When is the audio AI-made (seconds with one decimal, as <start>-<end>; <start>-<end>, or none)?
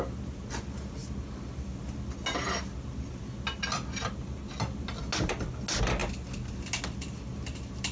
none